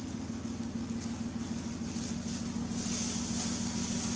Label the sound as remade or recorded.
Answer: recorded